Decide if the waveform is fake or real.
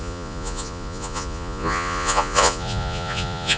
fake